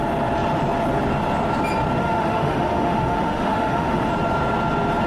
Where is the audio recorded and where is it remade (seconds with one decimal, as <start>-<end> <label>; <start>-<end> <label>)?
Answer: 0.0-2.0 recorded; 2.0-4.1 remade; 4.1-5.1 recorded